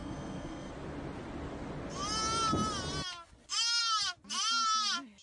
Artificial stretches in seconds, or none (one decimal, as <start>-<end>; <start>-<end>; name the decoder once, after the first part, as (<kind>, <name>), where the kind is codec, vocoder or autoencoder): 0.0-0.7 (codec, SNAC)